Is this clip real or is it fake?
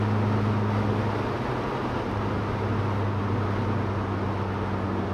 real